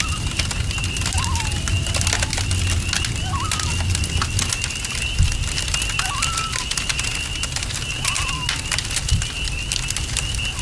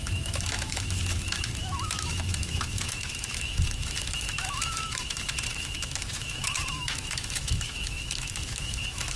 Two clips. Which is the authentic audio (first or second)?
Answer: first